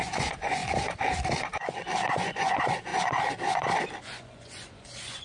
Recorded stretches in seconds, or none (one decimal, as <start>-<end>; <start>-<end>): 0.6-2.1; 2.9-4.0